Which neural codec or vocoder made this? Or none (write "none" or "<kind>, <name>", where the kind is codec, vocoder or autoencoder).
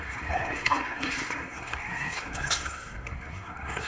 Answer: codec, SNAC